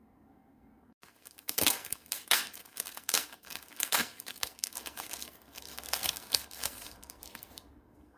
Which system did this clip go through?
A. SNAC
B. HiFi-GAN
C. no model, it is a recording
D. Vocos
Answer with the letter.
A